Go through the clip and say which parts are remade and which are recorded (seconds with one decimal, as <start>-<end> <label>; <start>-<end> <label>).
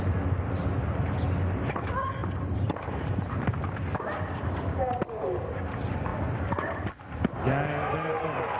0.0-2.2 recorded; 2.2-4.0 remade; 4.0-8.6 recorded